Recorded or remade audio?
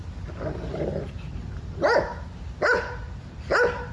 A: recorded